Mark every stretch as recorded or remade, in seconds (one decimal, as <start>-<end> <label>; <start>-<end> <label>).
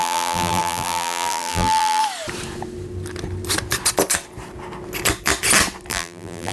0.0-2.0 remade; 2.0-5.9 recorded; 5.9-6.5 remade